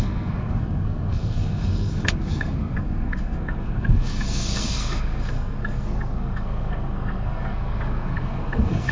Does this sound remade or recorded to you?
remade